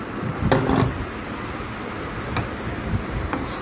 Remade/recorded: recorded